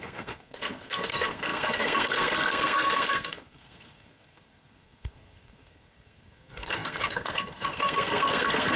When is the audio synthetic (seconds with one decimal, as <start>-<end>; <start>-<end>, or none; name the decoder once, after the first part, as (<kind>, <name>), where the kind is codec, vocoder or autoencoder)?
0.0-8.8 (codec, SNAC)